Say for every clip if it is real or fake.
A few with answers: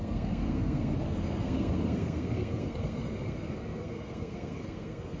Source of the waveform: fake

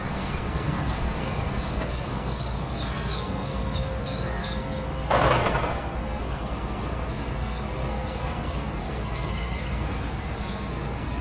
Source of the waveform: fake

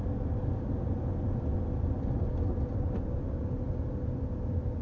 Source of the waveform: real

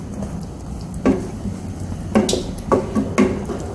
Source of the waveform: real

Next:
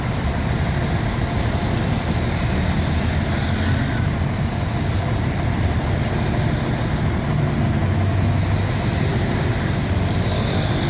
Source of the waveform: real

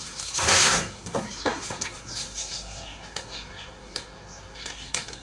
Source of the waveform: fake